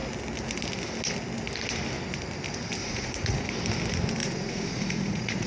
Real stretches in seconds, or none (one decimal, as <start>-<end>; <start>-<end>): 0.0-2.8; 3.6-4.2